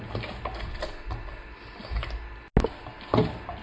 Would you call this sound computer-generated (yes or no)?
no